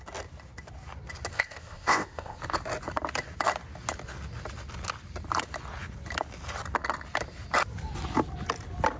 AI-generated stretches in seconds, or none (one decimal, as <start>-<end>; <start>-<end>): 1.3-2.4